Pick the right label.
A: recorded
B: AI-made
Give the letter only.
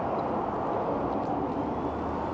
A